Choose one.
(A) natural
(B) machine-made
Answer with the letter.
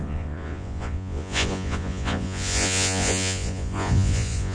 B